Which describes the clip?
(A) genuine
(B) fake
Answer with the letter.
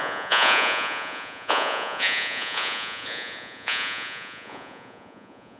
B